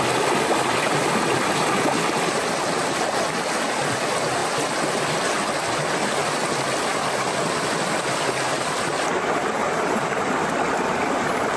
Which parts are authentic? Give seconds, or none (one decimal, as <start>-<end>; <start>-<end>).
0.0-9.6; 10.3-11.6